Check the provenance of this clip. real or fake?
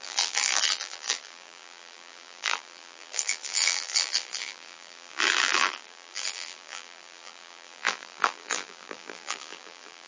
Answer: fake